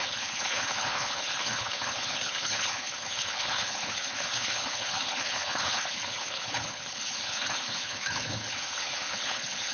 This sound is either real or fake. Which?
fake